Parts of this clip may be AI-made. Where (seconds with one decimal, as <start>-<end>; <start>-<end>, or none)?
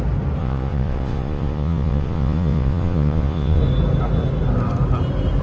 0.4-3.6